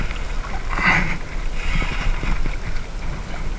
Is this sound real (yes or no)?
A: yes